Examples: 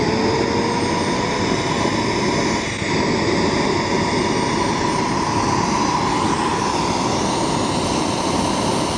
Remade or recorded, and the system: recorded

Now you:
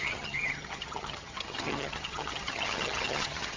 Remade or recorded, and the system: remade, vocoder, HiFi-GAN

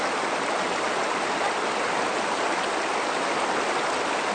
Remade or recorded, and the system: recorded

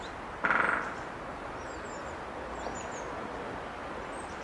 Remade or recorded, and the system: recorded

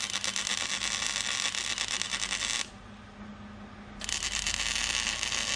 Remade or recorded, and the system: recorded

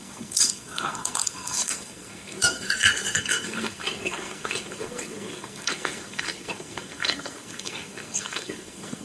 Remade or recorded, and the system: remade, codec, SNAC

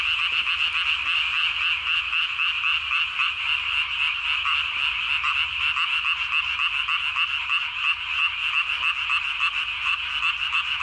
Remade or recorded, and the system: recorded